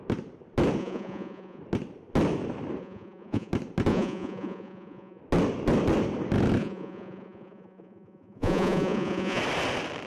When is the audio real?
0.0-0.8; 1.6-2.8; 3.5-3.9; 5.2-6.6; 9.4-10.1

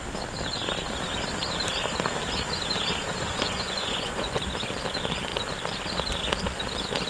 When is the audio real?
0.0-3.2; 4.4-7.1